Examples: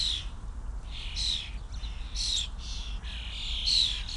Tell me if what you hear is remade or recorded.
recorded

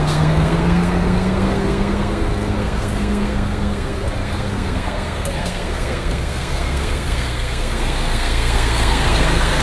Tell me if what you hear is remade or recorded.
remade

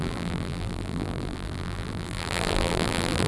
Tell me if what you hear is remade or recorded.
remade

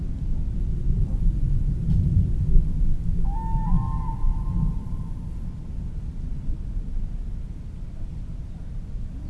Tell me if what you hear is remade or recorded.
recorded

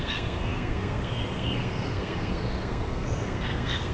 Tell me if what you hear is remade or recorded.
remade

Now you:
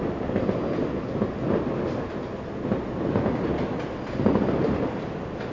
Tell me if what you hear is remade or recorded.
recorded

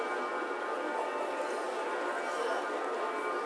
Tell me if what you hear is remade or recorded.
recorded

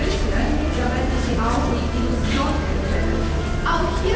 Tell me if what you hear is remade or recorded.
recorded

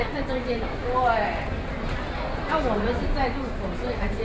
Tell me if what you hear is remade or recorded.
recorded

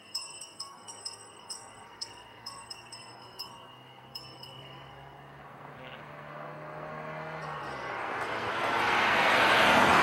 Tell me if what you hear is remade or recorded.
remade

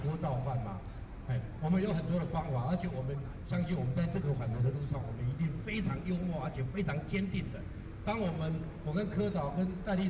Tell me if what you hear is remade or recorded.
recorded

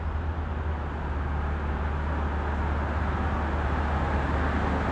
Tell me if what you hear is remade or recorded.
recorded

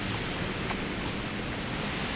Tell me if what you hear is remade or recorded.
recorded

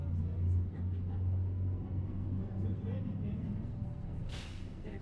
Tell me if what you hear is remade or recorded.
remade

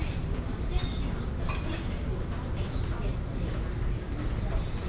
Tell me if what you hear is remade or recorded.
recorded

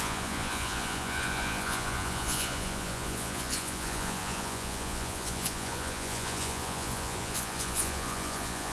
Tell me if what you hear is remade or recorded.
remade